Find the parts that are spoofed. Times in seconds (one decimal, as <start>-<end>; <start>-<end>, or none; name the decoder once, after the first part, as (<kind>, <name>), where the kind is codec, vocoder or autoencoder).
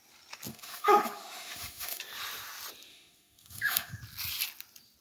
0.5-2.0 (autoencoder, DAC-VAE); 2.9-4.0